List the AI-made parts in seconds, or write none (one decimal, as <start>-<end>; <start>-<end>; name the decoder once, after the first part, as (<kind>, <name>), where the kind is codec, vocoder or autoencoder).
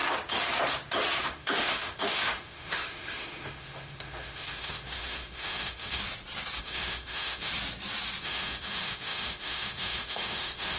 1.2-6.0 (autoencoder, DAC-VAE); 6.6-7.5; 8.2-10.8